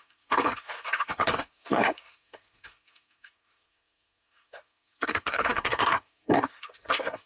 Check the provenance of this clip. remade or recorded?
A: remade